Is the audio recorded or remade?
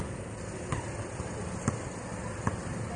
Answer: recorded